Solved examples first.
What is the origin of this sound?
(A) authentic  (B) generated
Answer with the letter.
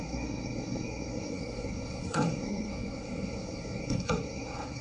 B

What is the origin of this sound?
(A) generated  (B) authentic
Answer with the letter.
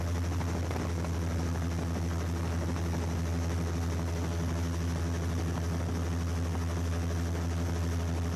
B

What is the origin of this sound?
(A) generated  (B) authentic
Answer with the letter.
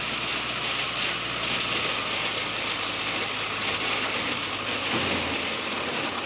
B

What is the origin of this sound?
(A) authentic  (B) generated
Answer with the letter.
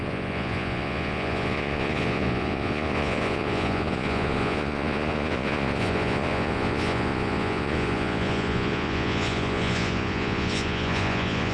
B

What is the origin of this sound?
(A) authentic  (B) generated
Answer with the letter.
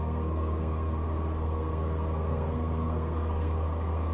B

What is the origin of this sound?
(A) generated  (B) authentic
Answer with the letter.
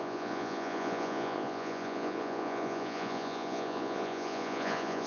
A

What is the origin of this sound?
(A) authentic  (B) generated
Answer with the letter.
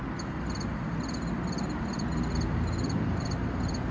A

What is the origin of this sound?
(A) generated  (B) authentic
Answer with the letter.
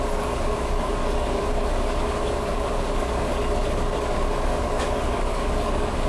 A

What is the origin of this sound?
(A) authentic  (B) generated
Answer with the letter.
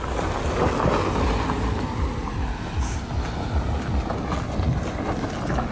A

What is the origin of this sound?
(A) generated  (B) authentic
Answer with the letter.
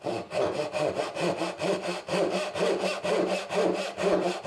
B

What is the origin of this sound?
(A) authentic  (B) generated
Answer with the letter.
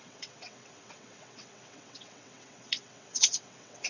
B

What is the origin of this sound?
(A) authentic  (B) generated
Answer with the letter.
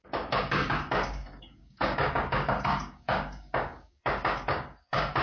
B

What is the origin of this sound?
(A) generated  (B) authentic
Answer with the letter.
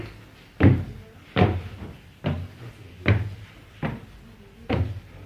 B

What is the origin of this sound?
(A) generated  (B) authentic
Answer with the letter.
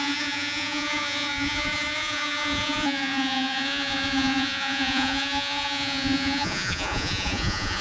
A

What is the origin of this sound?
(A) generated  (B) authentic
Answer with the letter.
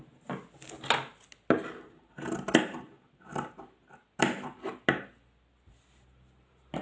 B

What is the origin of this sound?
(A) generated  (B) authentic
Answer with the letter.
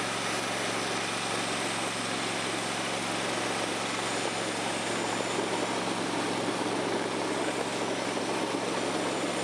B